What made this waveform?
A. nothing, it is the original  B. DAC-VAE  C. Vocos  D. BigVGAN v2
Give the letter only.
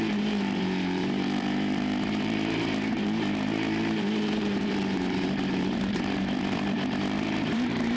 D